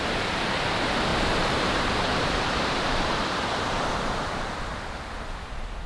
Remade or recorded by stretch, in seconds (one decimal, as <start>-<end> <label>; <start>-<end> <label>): 0.0-1.1 recorded; 1.1-4.6 remade; 4.6-5.9 recorded